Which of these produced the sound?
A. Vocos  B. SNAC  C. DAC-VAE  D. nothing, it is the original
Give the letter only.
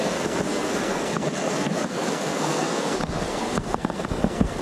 B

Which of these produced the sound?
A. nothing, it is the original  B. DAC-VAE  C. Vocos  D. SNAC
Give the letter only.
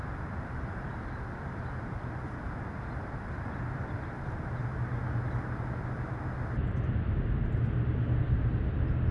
A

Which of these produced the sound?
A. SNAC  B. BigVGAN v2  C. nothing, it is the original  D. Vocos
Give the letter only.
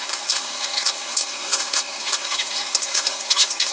A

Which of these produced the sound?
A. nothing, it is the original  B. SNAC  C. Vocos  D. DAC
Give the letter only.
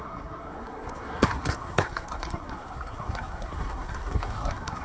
B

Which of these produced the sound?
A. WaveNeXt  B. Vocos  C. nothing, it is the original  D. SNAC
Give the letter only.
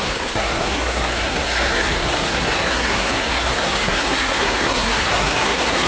D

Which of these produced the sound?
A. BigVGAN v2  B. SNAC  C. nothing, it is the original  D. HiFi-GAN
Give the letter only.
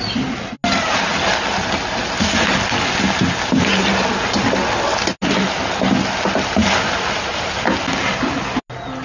C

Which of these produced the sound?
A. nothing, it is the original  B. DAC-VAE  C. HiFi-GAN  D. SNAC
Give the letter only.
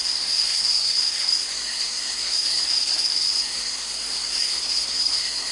D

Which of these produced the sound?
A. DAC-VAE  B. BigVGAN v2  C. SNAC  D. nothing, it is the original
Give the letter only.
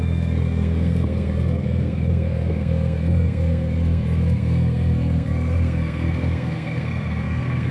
C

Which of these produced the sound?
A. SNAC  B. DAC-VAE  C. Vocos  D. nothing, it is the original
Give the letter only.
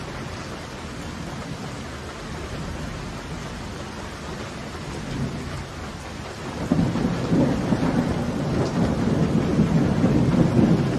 D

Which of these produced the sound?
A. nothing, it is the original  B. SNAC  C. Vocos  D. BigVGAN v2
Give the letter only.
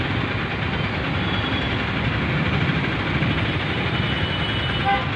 A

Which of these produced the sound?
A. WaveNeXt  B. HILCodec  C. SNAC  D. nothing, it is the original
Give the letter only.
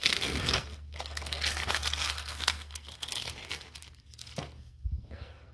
C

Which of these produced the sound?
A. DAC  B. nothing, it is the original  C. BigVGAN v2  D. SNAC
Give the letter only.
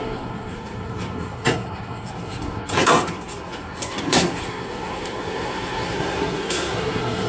D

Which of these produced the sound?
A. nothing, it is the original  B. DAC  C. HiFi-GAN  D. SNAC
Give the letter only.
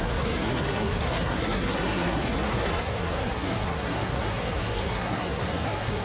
D